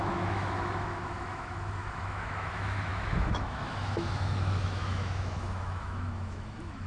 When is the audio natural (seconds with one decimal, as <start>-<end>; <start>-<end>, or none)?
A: none